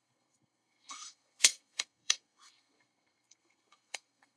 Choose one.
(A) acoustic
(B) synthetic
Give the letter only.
B